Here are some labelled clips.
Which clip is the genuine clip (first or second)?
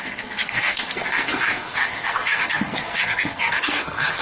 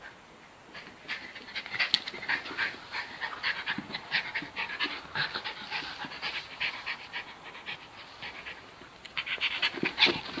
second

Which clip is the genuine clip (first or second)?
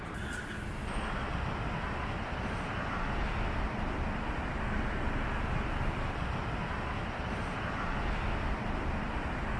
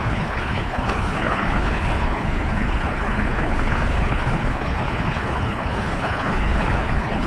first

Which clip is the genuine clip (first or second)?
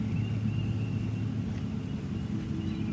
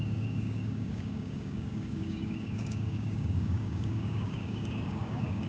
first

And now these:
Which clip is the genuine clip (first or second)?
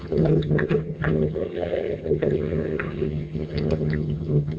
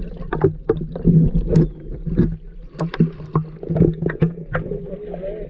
second